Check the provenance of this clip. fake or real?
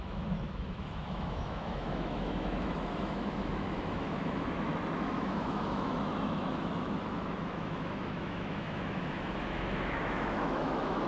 fake